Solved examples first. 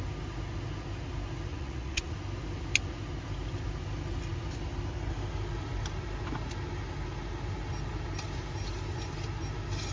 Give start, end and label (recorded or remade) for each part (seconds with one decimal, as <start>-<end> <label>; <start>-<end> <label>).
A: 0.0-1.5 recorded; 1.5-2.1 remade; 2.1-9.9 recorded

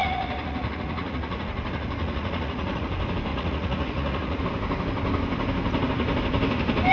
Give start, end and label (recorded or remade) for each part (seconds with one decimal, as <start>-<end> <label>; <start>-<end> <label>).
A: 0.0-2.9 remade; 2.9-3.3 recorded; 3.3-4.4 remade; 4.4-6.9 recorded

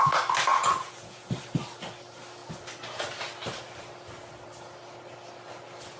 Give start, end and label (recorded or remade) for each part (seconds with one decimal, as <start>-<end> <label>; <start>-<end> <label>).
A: 0.0-0.5 recorded; 0.5-1.3 remade; 1.3-6.0 recorded

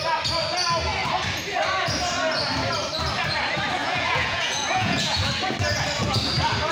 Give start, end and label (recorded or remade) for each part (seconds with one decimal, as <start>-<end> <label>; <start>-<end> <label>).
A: 0.0-3.8 recorded; 3.8-5.3 remade; 5.3-6.7 recorded

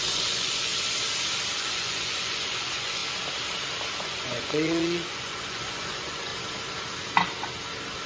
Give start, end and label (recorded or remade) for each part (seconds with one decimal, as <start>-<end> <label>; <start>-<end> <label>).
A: 0.0-0.7 remade; 0.7-1.6 recorded; 1.6-3.0 remade; 3.0-4.0 recorded; 4.0-6.3 remade; 6.3-8.1 recorded

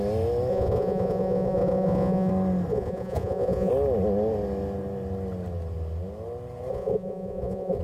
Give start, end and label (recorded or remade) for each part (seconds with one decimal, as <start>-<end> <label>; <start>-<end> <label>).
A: 0.0-0.5 recorded; 0.5-2.3 remade; 2.3-2.7 recorded; 2.7-3.7 remade; 3.7-6.7 recorded; 6.7-7.8 remade

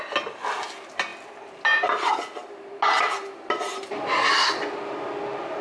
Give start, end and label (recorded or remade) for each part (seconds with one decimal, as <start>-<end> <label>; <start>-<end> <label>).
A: 0.0-5.6 recorded